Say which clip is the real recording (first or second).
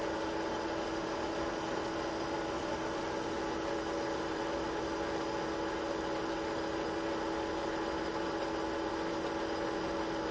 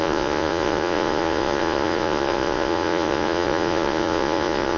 first